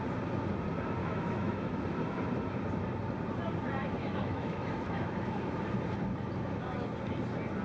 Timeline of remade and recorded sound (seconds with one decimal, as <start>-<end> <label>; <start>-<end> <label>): 0.0-1.0 recorded; 1.0-1.8 remade; 1.8-4.0 recorded; 4.0-5.5 remade; 5.5-7.6 recorded